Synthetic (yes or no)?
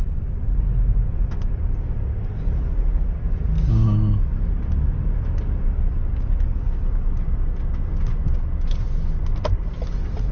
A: no